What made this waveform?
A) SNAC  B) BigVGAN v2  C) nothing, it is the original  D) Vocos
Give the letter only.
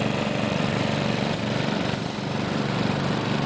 B